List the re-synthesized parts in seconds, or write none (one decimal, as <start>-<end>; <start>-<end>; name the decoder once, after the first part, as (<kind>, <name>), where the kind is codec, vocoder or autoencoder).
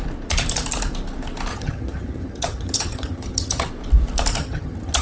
1.5-3.7 (vocoder, HiFi-GAN); 4.4-5.0